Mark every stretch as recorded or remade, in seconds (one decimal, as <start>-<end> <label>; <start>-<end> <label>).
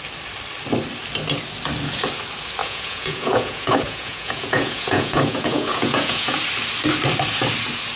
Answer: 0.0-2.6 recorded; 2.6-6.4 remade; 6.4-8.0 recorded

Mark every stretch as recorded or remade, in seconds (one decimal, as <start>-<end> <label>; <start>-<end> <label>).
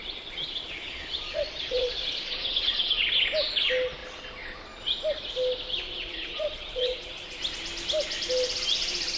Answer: 0.0-3.0 remade; 3.0-5.8 recorded; 5.8-7.4 remade; 7.4-9.2 recorded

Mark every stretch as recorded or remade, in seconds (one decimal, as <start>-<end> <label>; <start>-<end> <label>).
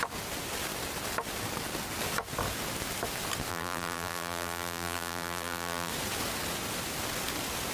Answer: 0.0-3.5 recorded; 3.5-5.9 remade; 5.9-7.7 recorded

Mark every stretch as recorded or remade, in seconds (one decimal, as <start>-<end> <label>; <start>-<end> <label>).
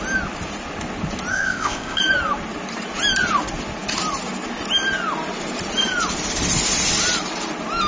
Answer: 0.0-1.3 recorded; 1.3-2.0 remade; 2.0-7.9 recorded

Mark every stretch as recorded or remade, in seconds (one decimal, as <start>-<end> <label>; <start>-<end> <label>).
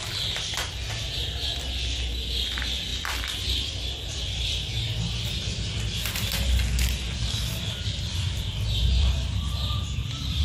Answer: 0.0-2.9 recorded; 2.9-5.0 remade; 5.0-8.9 recorded; 8.9-10.4 remade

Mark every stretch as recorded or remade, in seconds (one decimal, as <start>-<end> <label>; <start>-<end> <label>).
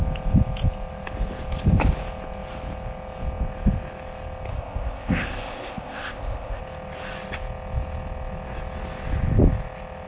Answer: 0.0-4.5 recorded; 4.5-6.6 remade; 6.6-10.1 recorded